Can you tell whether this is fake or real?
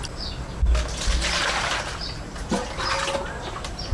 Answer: real